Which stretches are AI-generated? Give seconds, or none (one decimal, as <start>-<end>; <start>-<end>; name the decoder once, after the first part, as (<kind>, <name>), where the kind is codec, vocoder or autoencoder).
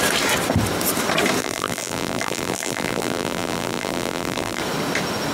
1.4-4.6 (vocoder, BigVGAN v2)